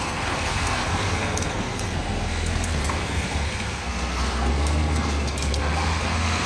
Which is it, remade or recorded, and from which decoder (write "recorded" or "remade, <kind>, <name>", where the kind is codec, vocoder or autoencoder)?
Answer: remade, codec, SNAC